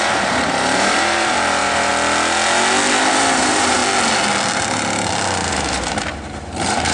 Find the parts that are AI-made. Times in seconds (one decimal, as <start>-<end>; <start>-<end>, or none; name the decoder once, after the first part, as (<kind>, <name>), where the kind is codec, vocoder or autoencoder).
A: 0.0-1.9 (vocoder, BigVGAN v2); 3.1-3.8; 5.5-6.9